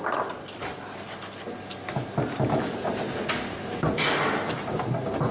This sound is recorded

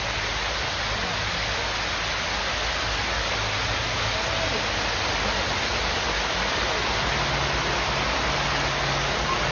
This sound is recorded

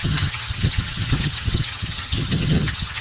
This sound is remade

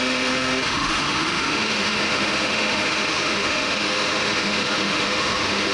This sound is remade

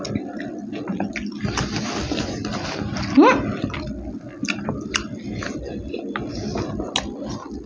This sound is recorded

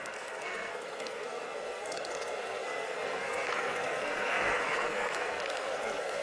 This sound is remade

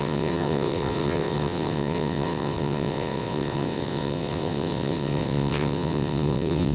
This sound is remade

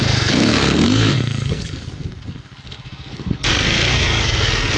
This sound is remade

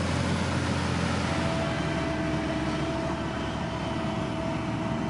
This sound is recorded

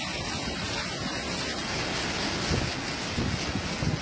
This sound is recorded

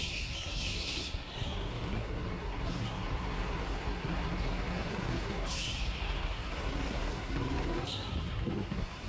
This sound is remade